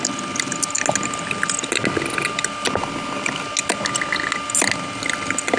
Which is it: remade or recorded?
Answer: recorded